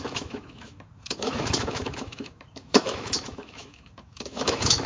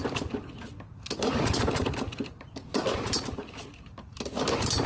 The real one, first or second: second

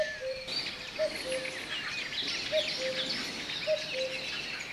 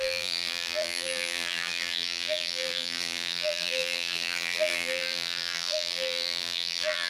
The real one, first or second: first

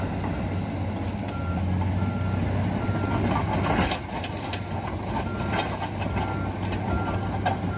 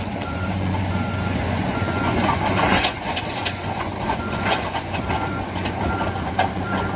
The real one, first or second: first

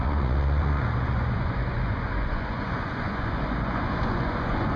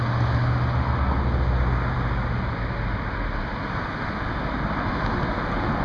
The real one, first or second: second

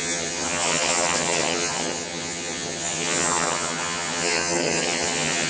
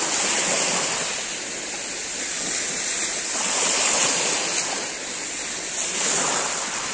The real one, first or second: second